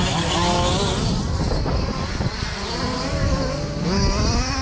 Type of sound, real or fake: real